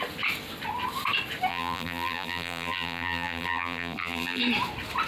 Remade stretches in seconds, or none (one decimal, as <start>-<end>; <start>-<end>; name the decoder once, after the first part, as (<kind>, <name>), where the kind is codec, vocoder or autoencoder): 1.5-4.4 (vocoder, BigVGAN v2)